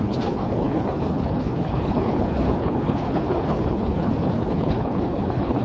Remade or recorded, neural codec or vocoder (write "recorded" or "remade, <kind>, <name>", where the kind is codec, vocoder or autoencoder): remade, codec, HILCodec